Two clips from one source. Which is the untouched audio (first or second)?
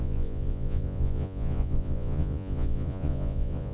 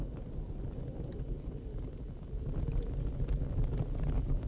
second